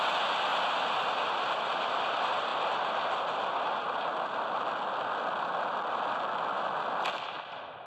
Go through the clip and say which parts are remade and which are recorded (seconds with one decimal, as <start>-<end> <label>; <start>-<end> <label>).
0.0-0.5 remade; 0.5-1.4 recorded; 1.4-2.5 remade; 2.5-7.2 recorded; 7.2-7.9 remade